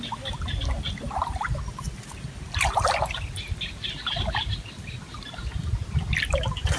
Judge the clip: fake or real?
real